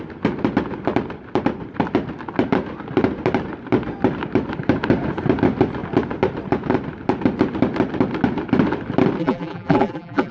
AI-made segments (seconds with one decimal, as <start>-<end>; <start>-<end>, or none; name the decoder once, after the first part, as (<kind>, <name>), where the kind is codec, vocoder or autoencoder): 9.2-10.3 (vocoder, BigVGAN v2)